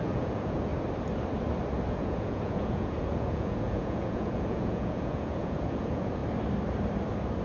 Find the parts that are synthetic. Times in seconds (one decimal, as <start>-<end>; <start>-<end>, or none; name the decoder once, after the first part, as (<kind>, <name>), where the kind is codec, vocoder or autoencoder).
0.0-0.7 (vocoder, Vocos); 1.9-6.2